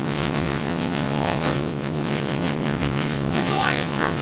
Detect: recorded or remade remade